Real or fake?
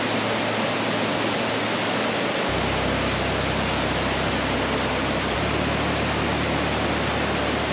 real